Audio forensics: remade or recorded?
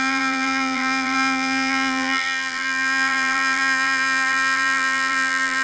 remade